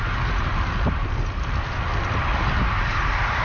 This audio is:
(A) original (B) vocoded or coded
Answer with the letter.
A